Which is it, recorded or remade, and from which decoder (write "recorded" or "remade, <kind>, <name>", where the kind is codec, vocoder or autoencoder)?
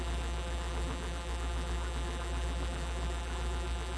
remade, vocoder, BigVGAN v2